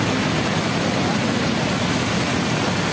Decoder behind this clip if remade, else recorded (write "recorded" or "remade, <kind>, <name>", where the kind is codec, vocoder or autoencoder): recorded